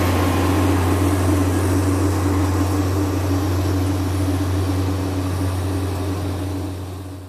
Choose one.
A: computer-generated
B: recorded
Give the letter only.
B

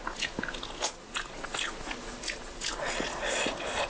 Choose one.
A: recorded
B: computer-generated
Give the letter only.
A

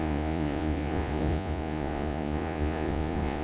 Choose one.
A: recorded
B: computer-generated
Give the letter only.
B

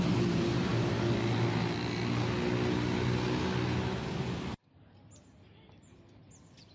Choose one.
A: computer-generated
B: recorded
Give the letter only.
B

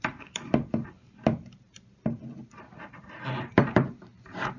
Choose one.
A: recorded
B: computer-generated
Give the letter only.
B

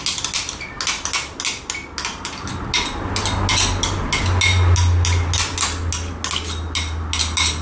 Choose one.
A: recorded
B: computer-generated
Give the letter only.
A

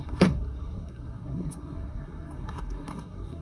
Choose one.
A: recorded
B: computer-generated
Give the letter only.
B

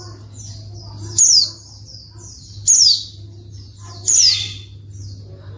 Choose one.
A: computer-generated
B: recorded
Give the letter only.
B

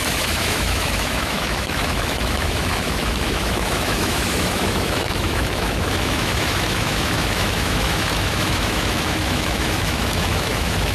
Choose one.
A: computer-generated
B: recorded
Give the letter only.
A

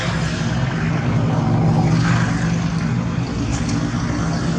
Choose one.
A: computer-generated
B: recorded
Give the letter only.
B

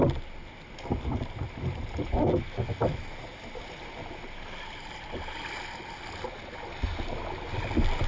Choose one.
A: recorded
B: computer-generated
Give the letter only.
A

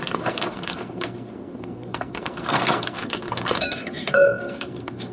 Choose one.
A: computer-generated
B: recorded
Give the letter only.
A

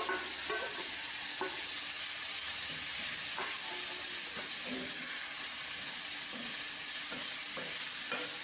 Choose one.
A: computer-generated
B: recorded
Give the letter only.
B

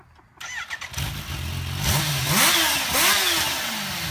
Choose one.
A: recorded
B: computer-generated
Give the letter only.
A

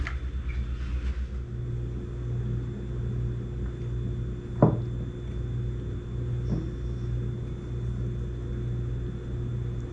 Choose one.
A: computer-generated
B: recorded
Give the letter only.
B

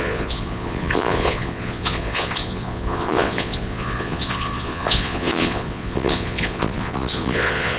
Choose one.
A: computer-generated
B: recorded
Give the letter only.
A